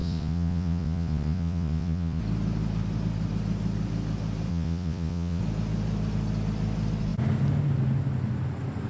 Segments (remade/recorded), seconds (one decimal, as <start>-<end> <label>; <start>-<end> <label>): 0.0-2.2 remade; 2.2-4.5 recorded; 4.5-5.4 remade; 5.4-8.9 recorded